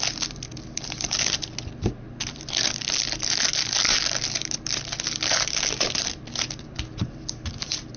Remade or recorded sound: recorded